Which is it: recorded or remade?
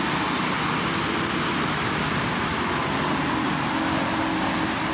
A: recorded